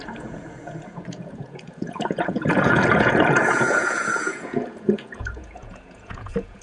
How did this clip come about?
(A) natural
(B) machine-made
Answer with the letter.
B